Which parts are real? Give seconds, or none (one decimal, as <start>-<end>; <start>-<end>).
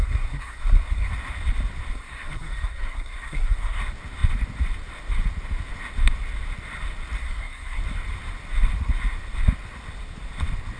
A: 1.1-1.9; 3.8-7.2; 7.8-10.8